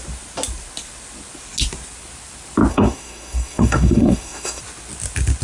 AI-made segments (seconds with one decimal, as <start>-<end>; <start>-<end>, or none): 2.7-4.6